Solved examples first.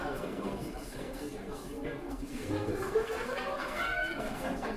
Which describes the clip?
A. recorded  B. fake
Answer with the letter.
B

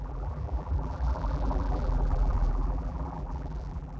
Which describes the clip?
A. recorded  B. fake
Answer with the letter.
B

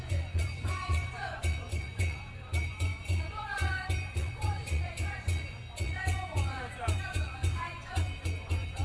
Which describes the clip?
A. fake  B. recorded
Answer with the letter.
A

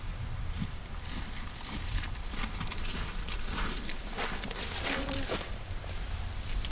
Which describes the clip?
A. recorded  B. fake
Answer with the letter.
A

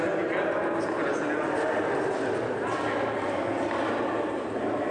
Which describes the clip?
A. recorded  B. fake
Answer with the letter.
A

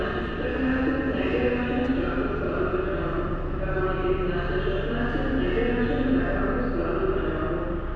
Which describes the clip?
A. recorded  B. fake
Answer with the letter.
A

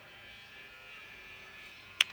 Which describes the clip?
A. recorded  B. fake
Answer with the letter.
B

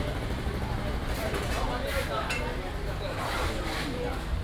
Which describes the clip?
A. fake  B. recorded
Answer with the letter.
B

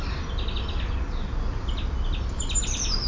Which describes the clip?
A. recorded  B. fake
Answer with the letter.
A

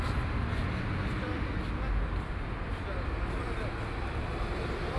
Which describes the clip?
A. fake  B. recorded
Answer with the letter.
B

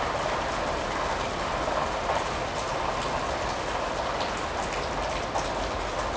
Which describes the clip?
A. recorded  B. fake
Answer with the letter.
A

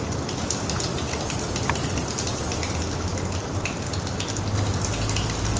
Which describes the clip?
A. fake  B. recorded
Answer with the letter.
B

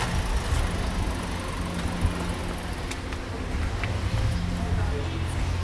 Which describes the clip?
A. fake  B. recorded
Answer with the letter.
B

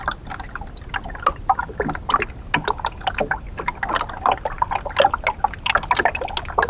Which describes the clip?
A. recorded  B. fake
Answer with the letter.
A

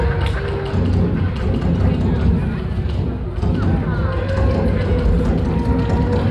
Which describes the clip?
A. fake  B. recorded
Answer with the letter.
B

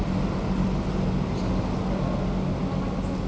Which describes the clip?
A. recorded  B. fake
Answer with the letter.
A